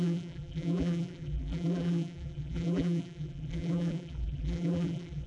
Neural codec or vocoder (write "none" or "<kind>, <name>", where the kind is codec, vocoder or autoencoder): vocoder, BigVGAN v2